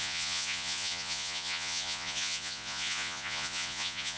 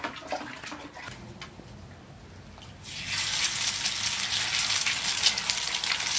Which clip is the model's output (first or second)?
first